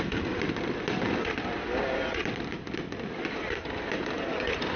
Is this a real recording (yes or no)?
yes